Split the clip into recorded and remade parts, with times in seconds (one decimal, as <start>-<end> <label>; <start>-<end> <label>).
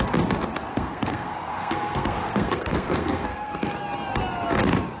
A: 0.0-0.7 recorded; 0.7-3.7 remade; 3.7-5.0 recorded